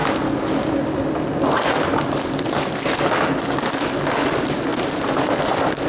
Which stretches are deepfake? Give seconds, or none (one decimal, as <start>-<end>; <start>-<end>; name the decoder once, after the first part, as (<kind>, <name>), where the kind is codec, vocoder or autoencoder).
4.7-5.4 (vocoder, BigVGAN v2)

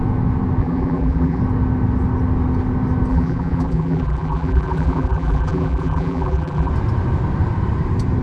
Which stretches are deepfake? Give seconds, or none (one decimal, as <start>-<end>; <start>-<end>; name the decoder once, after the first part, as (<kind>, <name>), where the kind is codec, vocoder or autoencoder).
0.6-1.4 (vocoder, BigVGAN v2); 3.1-6.7

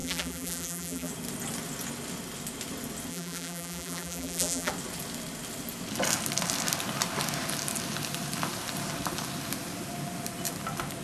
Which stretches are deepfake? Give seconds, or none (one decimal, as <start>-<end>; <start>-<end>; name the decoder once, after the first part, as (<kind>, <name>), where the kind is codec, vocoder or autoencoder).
0.0-1.1 (vocoder, BigVGAN v2); 3.1-4.7

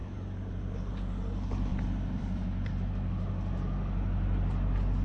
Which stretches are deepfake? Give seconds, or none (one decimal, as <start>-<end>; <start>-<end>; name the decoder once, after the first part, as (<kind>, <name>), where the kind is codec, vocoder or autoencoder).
1.7-3.1 (vocoder, BigVGAN v2)

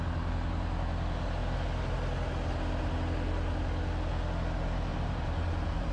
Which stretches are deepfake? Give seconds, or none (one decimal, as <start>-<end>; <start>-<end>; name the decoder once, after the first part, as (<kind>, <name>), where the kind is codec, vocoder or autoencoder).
4.9-5.9 (vocoder, BigVGAN v2)

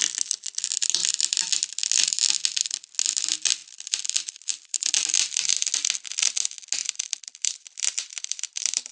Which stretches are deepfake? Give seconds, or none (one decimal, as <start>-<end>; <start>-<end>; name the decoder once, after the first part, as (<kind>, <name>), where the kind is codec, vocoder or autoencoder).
3.6-4.9 (vocoder, BigVGAN v2); 6.8-8.9

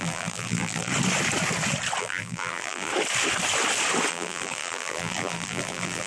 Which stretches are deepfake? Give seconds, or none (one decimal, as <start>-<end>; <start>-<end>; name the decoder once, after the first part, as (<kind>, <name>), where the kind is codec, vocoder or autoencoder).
0.0-0.9 (vocoder, BigVGAN v2); 2.0-2.9; 4.1-6.1